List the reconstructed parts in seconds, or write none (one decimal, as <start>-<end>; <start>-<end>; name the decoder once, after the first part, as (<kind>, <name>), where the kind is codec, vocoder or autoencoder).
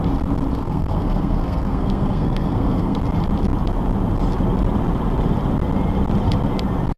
0.5-3.0 (codec, SNAC)